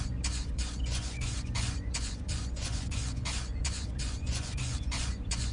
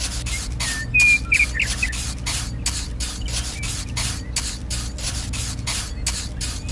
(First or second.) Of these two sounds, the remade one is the first